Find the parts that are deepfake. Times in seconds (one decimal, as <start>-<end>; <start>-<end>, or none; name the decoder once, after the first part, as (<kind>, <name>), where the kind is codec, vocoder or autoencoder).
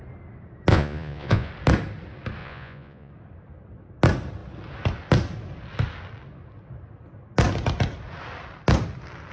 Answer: 0.7-1.5 (vocoder, Vocos); 2.4-3.1